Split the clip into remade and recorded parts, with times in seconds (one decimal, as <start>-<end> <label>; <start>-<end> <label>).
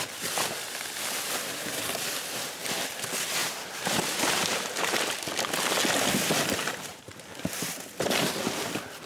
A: 0.0-3.4 recorded; 3.4-5.1 remade; 5.1-6.9 recorded; 6.9-7.8 remade; 7.8-9.1 recorded